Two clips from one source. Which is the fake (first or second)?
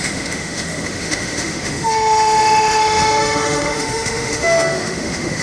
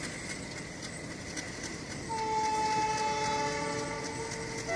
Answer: first